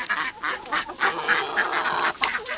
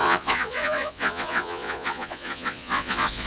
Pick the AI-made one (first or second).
second